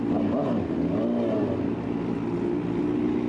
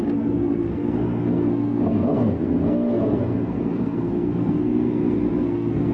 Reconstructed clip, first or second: second